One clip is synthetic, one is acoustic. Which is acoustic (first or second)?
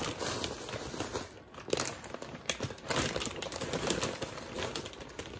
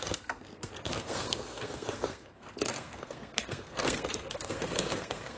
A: first